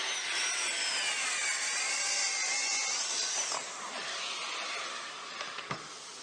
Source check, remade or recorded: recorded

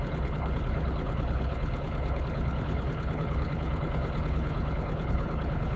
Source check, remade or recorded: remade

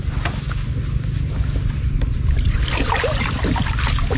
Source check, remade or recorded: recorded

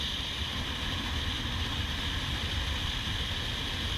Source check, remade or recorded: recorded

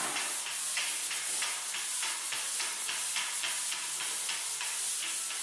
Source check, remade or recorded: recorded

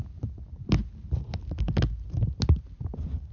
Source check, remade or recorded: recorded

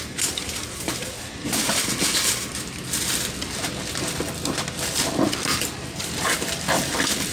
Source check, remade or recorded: remade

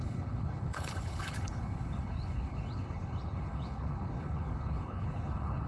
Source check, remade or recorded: remade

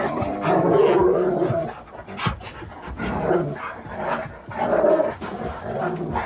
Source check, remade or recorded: recorded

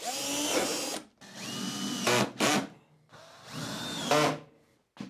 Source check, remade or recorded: recorded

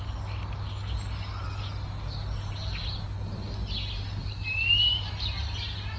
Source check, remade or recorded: recorded